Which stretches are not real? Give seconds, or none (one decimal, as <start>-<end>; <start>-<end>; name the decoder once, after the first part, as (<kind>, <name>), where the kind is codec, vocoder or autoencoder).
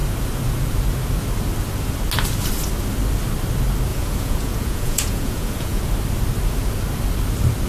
3.9-5.8 (vocoder, Vocos)